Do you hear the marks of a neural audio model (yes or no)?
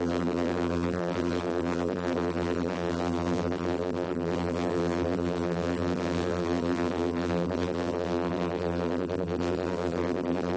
yes